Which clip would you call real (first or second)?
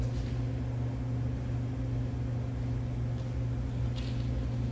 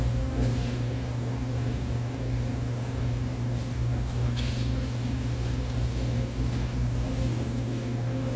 first